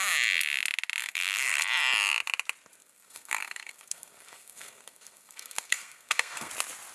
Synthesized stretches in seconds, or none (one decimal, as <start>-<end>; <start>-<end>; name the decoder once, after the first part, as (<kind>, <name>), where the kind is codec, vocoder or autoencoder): 1.0-1.6 (codec, SNAC); 2.8-6.5